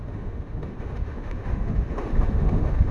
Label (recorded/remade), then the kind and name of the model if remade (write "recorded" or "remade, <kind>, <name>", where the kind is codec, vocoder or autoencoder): remade, autoencoder, DAC-VAE